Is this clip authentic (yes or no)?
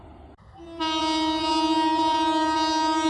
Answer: yes